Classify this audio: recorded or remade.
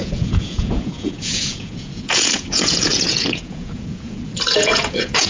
remade